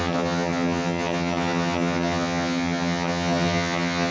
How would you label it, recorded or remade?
remade